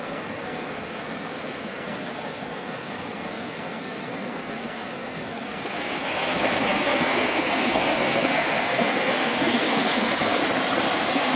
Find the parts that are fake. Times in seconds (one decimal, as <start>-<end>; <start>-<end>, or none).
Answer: 0.0-10.4; 11.0-11.4